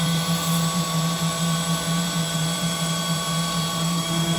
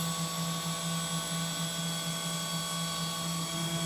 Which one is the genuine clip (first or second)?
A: second